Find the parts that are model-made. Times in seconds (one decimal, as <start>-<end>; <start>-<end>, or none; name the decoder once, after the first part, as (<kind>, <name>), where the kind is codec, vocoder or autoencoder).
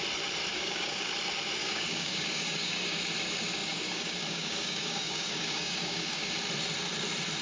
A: 0.5-1.1 (codec, DAC); 1.6-3.0; 3.6-6.3